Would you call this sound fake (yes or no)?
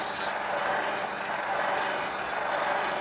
no